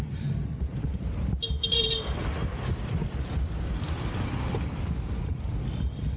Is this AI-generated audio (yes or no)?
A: yes